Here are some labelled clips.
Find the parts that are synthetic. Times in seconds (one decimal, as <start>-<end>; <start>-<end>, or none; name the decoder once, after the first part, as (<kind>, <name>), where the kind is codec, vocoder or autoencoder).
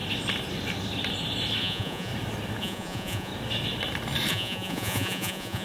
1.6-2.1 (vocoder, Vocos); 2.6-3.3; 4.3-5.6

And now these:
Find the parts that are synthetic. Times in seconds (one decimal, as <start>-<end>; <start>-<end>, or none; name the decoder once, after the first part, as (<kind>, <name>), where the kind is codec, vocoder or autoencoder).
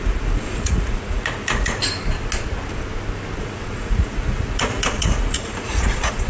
0.0-1.8 (vocoder, Vocos); 3.4-6.3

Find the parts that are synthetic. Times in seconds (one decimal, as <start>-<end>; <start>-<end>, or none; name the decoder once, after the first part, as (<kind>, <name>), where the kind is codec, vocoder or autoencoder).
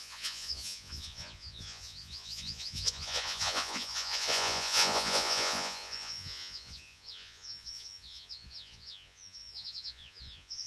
0.0-10.7 (vocoder, Vocos)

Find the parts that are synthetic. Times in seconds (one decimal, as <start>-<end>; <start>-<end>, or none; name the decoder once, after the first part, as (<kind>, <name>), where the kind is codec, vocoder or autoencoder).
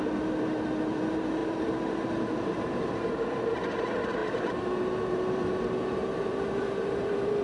none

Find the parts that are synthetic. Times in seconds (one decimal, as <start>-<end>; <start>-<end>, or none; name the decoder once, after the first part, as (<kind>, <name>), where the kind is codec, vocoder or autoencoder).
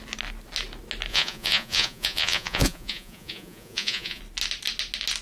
1.1-4.2 (vocoder, Vocos)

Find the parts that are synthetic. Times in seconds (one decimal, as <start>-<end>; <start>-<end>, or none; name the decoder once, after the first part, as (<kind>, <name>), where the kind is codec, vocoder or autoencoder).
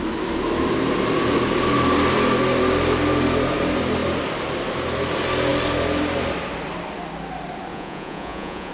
7.7-8.7 (vocoder, Vocos)